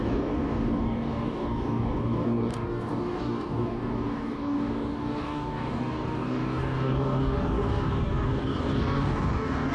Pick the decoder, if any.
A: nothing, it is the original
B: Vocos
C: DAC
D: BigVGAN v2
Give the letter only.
C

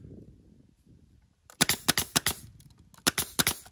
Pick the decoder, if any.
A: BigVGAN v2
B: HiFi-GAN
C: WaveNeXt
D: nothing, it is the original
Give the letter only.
D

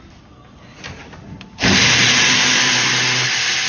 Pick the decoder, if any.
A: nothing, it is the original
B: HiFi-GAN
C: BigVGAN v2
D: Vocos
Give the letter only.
A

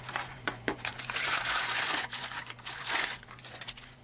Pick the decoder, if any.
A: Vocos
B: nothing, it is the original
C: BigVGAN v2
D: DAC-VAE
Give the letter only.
A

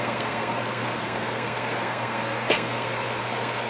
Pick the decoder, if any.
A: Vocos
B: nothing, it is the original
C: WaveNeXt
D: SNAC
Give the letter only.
D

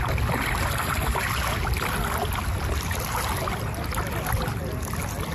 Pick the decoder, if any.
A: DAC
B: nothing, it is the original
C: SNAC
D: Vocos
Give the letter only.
B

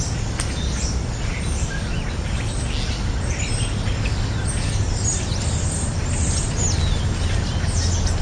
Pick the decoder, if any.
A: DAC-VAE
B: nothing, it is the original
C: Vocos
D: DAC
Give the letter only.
B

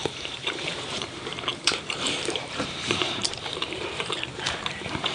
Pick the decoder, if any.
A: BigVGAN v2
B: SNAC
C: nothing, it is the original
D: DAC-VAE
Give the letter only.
A